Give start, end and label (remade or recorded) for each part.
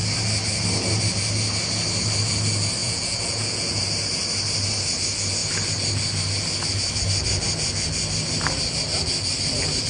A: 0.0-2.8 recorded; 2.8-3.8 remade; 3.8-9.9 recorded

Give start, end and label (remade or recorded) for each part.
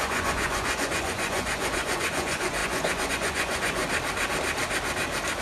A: 0.0-3.8 remade; 3.8-5.4 recorded